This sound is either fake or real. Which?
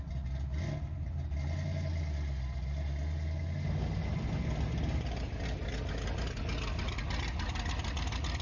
real